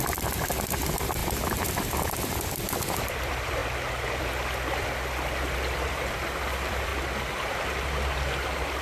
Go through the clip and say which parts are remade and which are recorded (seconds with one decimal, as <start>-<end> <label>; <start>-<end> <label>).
0.0-3.6 remade; 3.6-4.2 recorded; 4.2-6.9 remade; 6.9-8.8 recorded